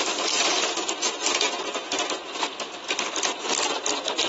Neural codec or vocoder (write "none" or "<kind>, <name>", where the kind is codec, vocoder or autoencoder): none